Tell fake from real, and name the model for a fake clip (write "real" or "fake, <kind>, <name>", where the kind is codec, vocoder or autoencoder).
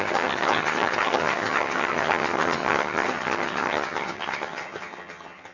fake, vocoder, HiFi-GAN